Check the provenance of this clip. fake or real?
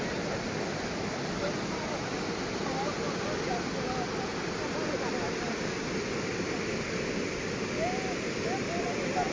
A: real